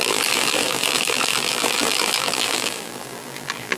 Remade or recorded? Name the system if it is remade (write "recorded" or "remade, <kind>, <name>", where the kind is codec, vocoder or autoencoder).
remade, vocoder, BigVGAN v2